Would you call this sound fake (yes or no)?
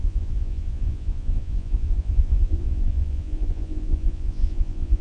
yes